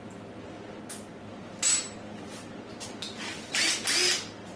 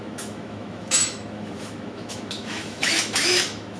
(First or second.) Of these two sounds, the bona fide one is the first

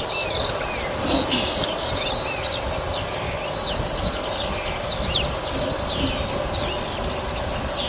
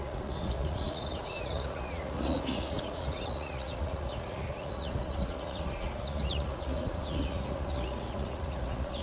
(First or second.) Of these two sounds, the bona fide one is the first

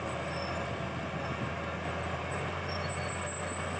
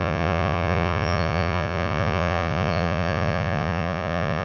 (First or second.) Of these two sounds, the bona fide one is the first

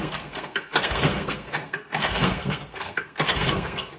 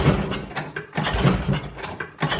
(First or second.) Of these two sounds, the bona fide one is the second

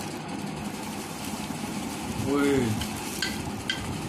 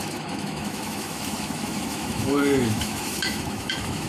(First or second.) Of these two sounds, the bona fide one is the first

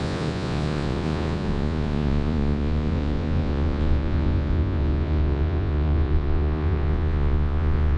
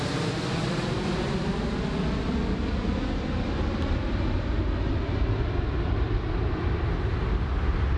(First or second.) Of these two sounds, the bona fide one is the second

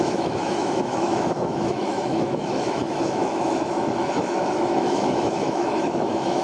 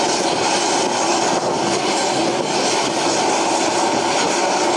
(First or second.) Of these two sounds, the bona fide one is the second